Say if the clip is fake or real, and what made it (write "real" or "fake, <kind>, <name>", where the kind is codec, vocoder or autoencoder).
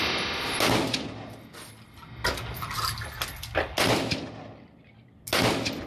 real